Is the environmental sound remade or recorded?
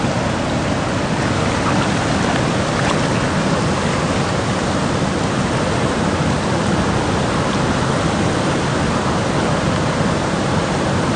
recorded